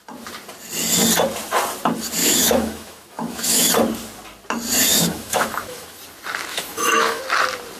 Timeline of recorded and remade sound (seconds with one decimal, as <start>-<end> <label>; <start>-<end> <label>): 0.0-2.2 recorded; 2.2-3.7 remade; 3.7-4.9 recorded; 4.9-6.0 remade; 6.0-6.5 recorded; 6.5-7.2 remade; 7.2-7.8 recorded

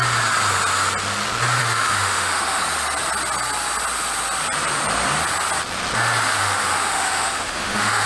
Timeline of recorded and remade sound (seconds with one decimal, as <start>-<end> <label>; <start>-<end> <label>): 0.0-1.6 recorded; 1.6-2.6 remade; 2.6-6.4 recorded; 6.4-8.1 remade

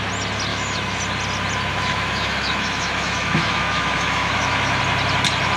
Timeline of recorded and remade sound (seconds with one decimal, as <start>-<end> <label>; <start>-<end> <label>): 0.0-0.5 recorded; 0.5-1.0 remade; 1.0-1.7 recorded; 1.7-4.8 remade; 4.8-5.6 recorded

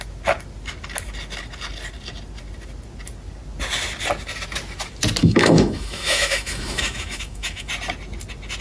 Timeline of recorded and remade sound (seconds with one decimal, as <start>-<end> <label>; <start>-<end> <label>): 0.0-5.2 recorded; 5.2-7.7 remade; 7.7-8.6 recorded

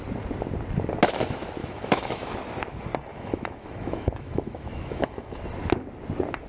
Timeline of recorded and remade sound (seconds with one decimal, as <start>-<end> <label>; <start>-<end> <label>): 0.0-1.6 recorded; 1.6-2.4 remade; 2.4-3.1 recorded; 3.1-5.4 remade; 5.4-6.5 recorded

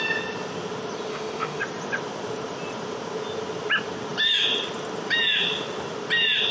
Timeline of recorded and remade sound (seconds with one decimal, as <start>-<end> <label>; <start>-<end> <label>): 0.0-1.1 recorded; 1.1-1.6 remade; 1.6-6.5 recorded